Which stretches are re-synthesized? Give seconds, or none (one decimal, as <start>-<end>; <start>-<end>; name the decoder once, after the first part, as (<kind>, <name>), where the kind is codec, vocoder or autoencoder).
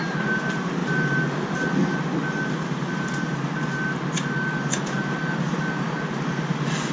none